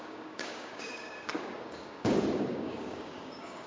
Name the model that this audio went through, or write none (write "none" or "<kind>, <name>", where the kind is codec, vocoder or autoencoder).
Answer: codec, DAC